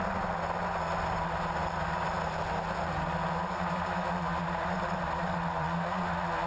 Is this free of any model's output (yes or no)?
yes